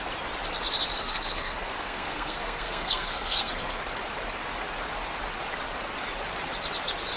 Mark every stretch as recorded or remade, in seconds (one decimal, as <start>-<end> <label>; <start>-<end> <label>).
0.0-1.0 recorded; 1.0-3.8 remade; 3.8-7.2 recorded